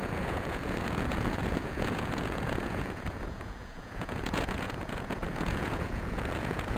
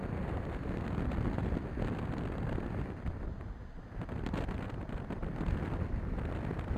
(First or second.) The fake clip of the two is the first